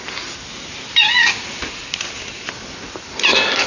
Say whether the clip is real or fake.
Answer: real